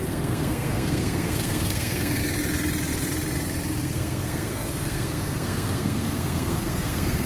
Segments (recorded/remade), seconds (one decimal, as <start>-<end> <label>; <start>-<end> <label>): 0.0-2.2 remade; 2.2-3.8 recorded; 3.8-7.3 remade